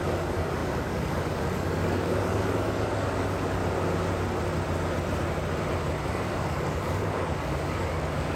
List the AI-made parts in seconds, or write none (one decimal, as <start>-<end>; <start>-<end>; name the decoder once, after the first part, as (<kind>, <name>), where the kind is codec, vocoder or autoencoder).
0.0-3.6 (codec, DAC); 6.1-8.3